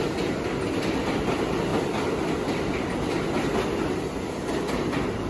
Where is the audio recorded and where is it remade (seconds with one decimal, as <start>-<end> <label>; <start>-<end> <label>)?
0.0-5.3 recorded